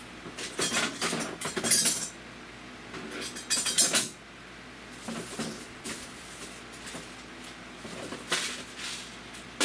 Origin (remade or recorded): recorded